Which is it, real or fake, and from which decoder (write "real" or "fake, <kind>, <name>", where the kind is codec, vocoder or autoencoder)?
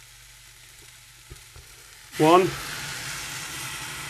real